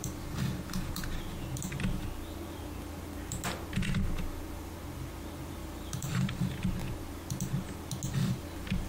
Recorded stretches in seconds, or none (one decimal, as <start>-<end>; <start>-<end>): 0.0-5.6; 6.3-8.9